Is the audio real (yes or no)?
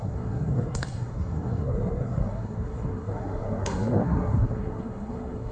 no